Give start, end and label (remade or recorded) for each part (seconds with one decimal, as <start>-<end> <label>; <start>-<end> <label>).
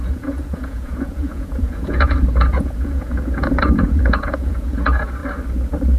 0.0-5.2 remade; 5.2-6.0 recorded